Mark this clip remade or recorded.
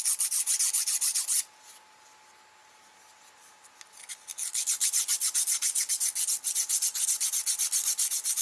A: recorded